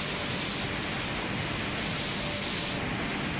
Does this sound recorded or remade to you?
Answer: recorded